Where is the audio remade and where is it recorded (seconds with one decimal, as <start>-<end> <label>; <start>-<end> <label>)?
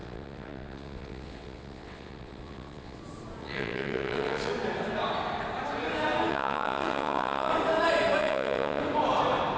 0.0-3.0 remade; 3.0-3.4 recorded; 3.4-4.5 remade; 4.5-6.3 recorded; 6.3-7.5 remade; 7.5-8.2 recorded; 8.2-8.8 remade; 8.8-9.6 recorded